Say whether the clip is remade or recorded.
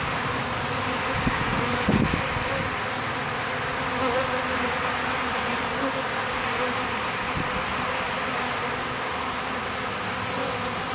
recorded